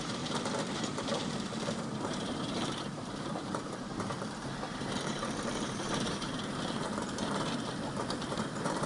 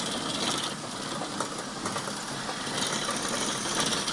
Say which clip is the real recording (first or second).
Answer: second